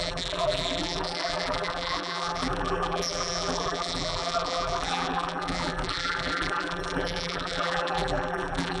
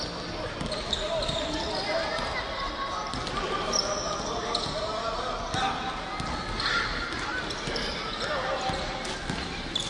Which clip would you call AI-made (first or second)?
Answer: first